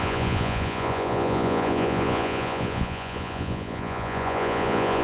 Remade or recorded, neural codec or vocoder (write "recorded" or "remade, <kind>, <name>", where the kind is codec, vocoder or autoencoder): remade, vocoder, Vocos